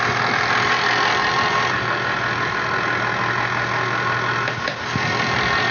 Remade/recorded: recorded